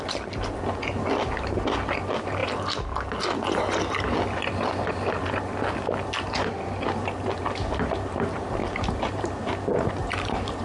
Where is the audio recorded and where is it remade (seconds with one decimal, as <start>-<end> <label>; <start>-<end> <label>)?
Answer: 0.0-8.6 recorded; 8.6-9.4 remade; 9.4-10.0 recorded; 10.0-10.6 remade